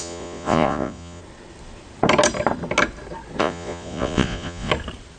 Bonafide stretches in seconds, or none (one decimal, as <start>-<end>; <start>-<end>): 1.2-3.4; 4.7-5.2